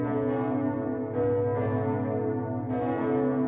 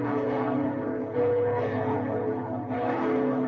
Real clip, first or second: first